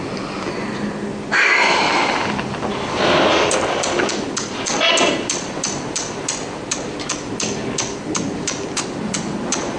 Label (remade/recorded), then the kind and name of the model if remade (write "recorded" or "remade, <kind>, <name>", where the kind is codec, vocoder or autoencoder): recorded